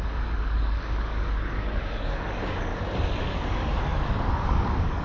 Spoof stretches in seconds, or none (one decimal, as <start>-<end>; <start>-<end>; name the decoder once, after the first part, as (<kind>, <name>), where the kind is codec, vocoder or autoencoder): 0.0-2.7 (codec, DAC); 3.2-5.0